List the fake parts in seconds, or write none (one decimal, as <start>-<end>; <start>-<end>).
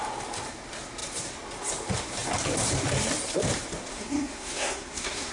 3.9-5.3